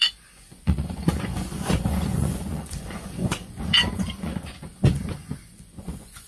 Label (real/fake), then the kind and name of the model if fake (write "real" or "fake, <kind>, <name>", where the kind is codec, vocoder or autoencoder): fake, vocoder, Vocos